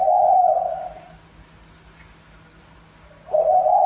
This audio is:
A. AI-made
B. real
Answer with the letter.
B